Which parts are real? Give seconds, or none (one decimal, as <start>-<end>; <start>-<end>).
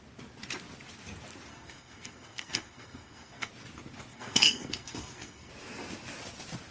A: 0.0-1.5; 3.5-4.1; 5.5-6.7